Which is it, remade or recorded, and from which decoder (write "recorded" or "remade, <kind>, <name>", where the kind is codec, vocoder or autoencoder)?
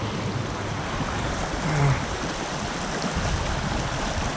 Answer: recorded